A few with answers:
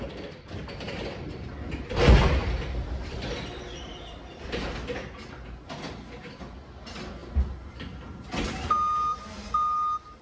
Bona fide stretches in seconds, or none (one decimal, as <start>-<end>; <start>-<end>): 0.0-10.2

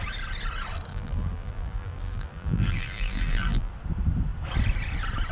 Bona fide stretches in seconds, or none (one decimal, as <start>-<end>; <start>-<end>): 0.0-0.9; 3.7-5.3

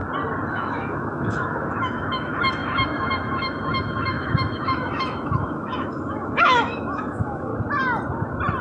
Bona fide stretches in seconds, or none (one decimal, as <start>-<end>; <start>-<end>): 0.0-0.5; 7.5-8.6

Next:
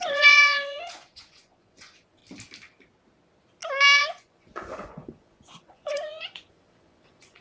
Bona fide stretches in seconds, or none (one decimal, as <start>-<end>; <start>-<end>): 2.2-4.0